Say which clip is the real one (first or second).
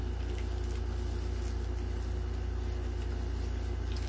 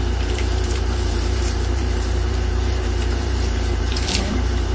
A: first